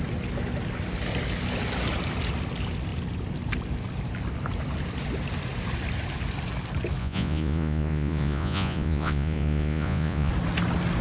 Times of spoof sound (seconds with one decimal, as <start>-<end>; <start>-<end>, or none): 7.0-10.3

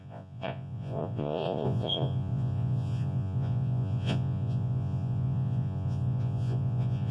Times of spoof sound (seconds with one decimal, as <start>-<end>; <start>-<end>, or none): 0.0-7.1

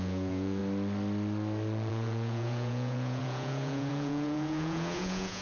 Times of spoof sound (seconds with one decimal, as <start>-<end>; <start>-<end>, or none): 0.0-0.6; 1.9-5.4